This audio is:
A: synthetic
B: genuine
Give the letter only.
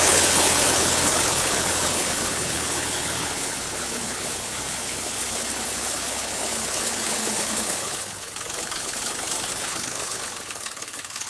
A